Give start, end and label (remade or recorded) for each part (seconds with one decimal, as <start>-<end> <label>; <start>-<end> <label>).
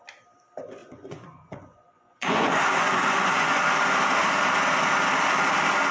0.0-0.8 recorded; 0.8-3.6 remade; 3.6-5.9 recorded